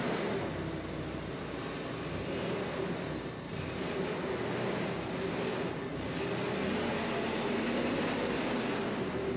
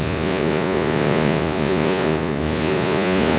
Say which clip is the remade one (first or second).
second